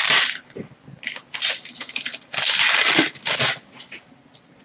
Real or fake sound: real